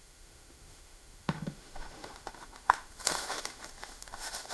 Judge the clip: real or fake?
fake